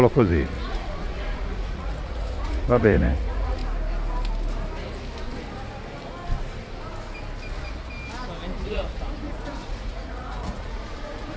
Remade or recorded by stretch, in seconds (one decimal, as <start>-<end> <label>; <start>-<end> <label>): 0.0-3.6 remade; 3.6-8.6 recorded; 8.6-11.4 remade